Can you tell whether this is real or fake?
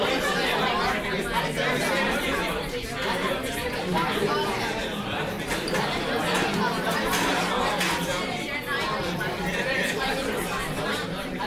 real